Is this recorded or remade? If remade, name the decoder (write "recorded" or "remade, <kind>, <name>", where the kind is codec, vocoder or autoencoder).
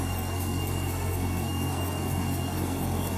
remade, codec, SNAC